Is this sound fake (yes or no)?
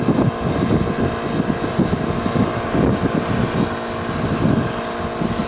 no